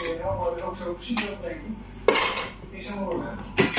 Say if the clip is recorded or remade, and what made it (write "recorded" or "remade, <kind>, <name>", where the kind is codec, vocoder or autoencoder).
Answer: recorded